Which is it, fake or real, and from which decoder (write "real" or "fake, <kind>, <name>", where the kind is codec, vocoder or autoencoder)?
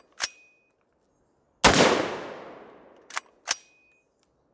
real